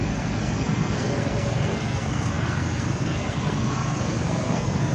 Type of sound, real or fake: fake